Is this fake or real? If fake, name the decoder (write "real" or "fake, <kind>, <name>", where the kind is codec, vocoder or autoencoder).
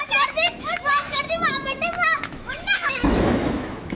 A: fake, autoencoder, DAC-VAE